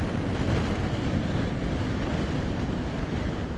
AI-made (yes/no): no